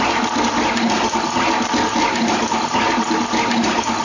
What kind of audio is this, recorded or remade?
recorded